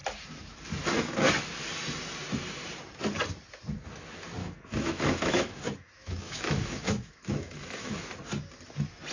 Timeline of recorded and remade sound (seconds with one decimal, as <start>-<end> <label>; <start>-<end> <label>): 0.0-4.4 recorded; 4.4-8.1 remade; 8.1-9.1 recorded